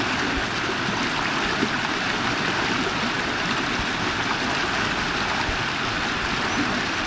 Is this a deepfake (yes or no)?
no